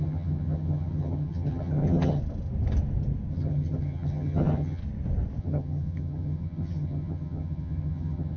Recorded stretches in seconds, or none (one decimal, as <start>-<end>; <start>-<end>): 2.2-3.3; 4.8-5.4